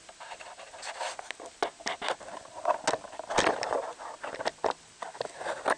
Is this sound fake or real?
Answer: real